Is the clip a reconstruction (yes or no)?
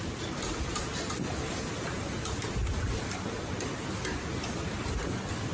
no